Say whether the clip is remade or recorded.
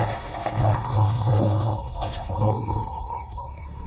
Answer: remade